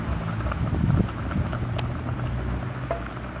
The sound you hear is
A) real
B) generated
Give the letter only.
A